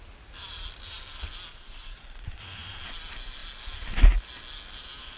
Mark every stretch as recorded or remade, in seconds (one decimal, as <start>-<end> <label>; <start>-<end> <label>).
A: 0.0-1.5 recorded; 1.5-2.4 remade; 2.4-5.2 recorded